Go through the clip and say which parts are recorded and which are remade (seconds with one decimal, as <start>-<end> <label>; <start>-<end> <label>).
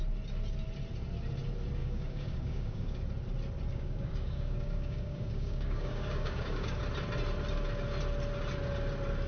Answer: 0.0-1.8 recorded; 1.8-3.0 remade; 3.0-3.7 recorded; 3.7-6.8 remade; 6.8-9.3 recorded